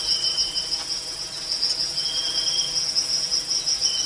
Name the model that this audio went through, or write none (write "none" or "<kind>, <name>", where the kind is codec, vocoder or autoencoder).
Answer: none